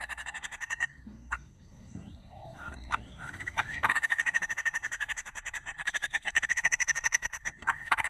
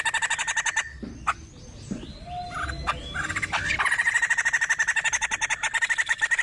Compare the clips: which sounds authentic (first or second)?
second